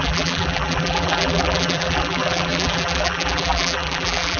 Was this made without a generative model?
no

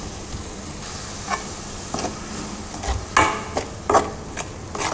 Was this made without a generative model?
yes